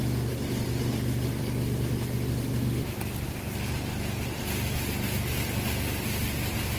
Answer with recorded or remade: recorded